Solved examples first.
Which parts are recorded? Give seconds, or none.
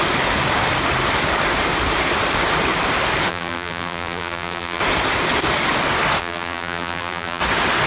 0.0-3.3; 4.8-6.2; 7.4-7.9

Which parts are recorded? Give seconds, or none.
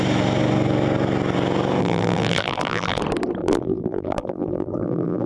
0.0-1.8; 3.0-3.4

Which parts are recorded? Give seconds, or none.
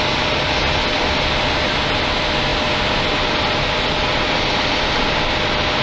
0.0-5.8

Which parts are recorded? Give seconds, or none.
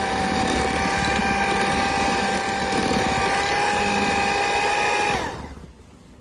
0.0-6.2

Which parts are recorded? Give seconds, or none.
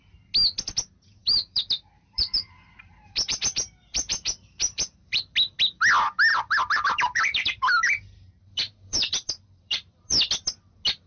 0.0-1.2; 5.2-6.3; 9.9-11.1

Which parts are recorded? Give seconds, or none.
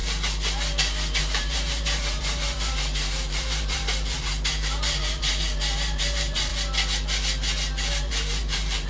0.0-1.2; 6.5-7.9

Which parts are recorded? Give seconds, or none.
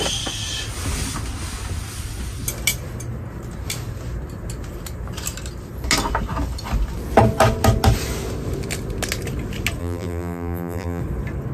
0.0-9.8; 11.0-11.5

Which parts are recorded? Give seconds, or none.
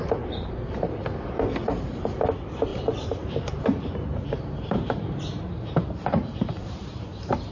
none